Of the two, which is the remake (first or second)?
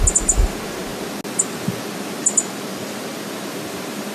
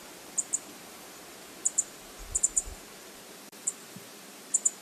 second